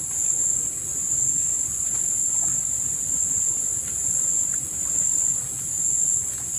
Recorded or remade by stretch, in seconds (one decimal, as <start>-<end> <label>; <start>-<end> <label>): 0.0-6.6 recorded